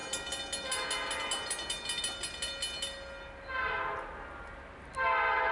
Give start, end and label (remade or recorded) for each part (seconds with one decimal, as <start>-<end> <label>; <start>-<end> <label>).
0.0-5.5 recorded

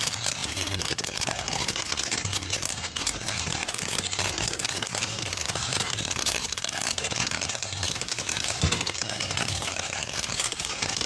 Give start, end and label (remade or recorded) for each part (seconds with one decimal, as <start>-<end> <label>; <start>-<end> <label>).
0.0-11.1 remade

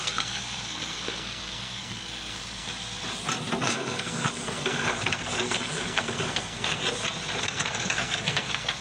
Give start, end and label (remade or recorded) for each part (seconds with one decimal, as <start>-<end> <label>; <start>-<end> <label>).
0.0-2.7 remade; 2.7-3.6 recorded; 3.6-6.8 remade; 6.8-7.4 recorded; 7.4-8.8 remade

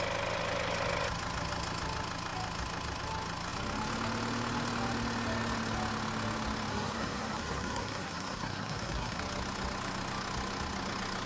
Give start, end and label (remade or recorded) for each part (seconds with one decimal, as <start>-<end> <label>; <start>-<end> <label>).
0.0-6.7 recorded; 6.7-9.2 remade; 9.2-11.3 recorded

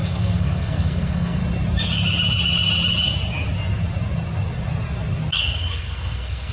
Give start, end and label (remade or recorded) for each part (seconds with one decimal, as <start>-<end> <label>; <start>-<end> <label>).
0.0-1.4 remade; 1.4-5.3 recorded; 5.3-6.5 remade

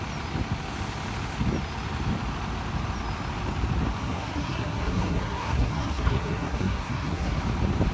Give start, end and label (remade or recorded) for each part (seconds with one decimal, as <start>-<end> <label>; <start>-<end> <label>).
0.0-4.0 recorded; 4.0-7.4 remade; 7.4-7.9 recorded